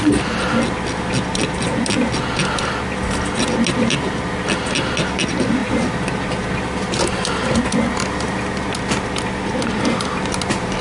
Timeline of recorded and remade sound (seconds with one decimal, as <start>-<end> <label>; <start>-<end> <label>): 0.0-10.8 recorded